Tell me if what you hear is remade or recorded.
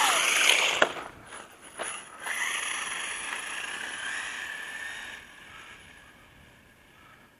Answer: recorded